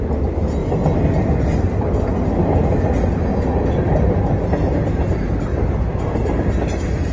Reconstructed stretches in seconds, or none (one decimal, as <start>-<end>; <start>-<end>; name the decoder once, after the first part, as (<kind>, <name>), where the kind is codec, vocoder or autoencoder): 5.5-6.5 (vocoder, BigVGAN v2)